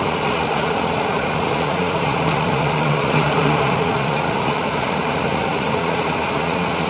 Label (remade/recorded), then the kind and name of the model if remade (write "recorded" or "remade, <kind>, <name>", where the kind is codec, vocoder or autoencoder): remade, vocoder, Vocos